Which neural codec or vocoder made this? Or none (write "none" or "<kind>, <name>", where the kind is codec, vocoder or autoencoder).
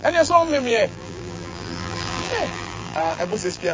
vocoder, BigVGAN v2